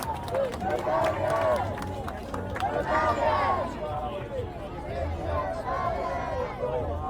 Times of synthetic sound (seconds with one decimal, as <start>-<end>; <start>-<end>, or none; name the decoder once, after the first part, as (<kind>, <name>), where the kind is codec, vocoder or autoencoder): none